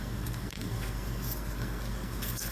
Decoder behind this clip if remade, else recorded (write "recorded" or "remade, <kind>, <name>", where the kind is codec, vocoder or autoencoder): remade, codec, SNAC